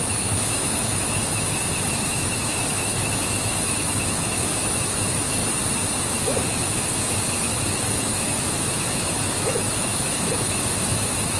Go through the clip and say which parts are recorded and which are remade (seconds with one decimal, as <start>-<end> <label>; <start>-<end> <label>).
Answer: 0.0-5.4 remade; 5.4-6.0 recorded; 6.0-11.4 remade